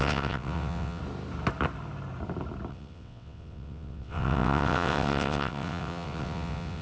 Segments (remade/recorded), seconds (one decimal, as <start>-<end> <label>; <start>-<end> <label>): 0.0-1.0 remade; 1.0-2.7 recorded; 2.7-6.8 remade

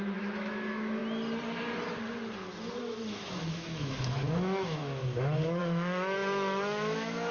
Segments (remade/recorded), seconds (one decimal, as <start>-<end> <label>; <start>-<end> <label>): 0.0-1.0 remade; 1.0-2.8 recorded; 2.8-7.3 remade

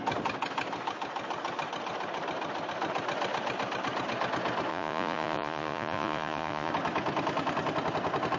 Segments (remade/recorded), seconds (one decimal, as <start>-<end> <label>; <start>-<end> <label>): 0.0-4.7 recorded; 4.7-6.7 remade; 6.7-8.4 recorded

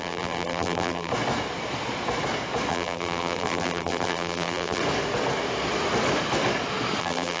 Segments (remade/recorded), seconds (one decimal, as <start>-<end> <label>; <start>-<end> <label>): 0.0-1.1 remade; 1.1-2.7 recorded; 2.7-4.8 remade; 4.8-7.0 recorded; 7.0-7.4 remade

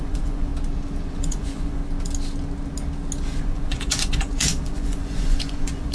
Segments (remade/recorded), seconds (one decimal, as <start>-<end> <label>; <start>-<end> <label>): 0.0-0.5 remade; 0.5-1.1 recorded; 1.1-1.8 remade; 1.8-3.4 recorded; 3.4-5.9 remade

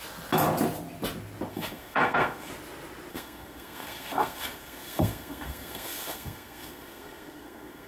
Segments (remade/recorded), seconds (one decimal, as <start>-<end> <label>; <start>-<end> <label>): 0.0-1.5 recorded; 1.5-2.5 remade; 2.5-3.1 recorded; 3.1-7.9 remade

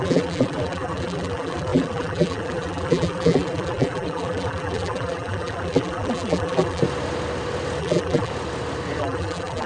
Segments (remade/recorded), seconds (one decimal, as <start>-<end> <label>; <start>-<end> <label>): 0.0-6.8 remade; 6.8-7.8 recorded; 7.8-8.3 remade; 8.3-9.0 recorded; 9.0-9.7 remade